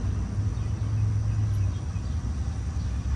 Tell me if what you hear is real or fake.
real